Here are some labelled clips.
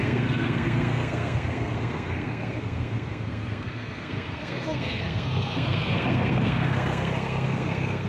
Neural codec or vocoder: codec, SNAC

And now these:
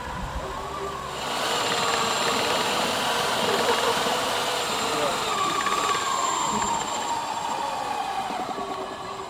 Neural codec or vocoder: none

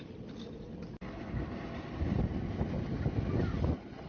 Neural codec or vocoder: none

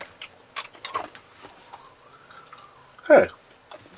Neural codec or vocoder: none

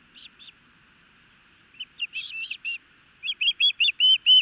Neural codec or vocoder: none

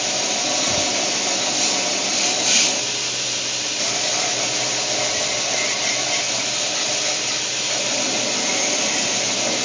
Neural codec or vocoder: none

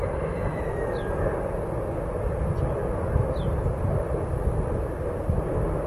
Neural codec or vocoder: none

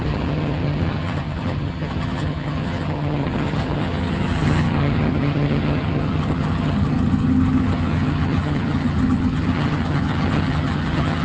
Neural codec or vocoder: vocoder, HiFi-GAN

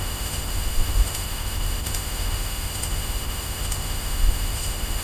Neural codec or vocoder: autoencoder, DAC-VAE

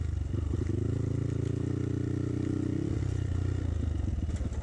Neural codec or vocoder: none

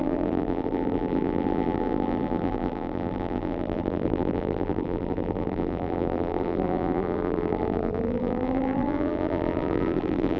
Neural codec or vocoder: vocoder, BigVGAN v2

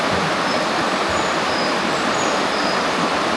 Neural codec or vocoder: vocoder, BigVGAN v2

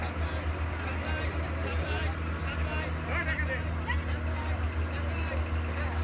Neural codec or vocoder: none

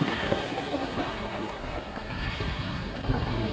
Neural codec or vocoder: codec, SNAC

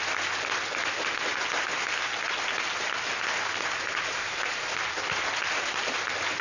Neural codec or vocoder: none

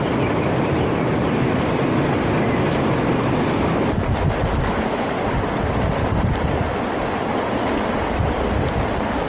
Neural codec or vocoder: none